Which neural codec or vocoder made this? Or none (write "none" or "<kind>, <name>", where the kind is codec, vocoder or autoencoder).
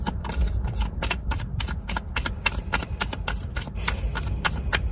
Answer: none